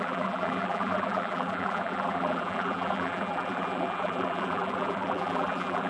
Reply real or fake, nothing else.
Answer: fake